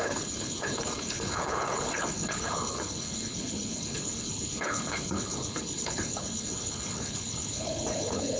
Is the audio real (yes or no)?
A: no